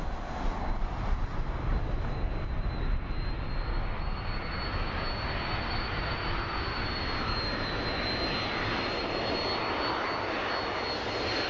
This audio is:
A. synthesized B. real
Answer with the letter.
B